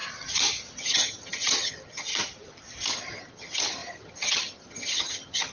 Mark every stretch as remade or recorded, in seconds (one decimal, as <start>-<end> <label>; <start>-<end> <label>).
0.0-0.8 recorded; 0.8-2.1 remade; 2.1-2.9 recorded; 2.9-5.5 remade